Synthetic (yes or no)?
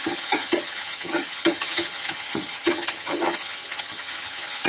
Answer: yes